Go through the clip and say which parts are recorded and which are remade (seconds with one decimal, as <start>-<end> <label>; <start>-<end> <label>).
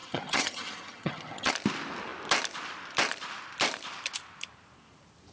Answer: 0.0-1.5 remade; 1.5-5.3 recorded